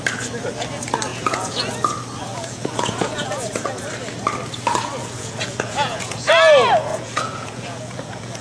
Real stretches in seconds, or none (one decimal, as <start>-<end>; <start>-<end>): 0.0-1.1; 1.7-2.3; 3.9-5.0; 6.3-6.9